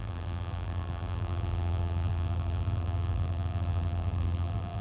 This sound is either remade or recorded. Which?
remade